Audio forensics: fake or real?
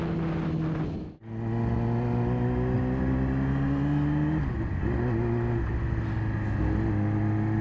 real